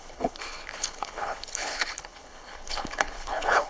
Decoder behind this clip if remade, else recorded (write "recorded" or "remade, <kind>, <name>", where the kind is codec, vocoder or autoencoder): remade, codec, HILCodec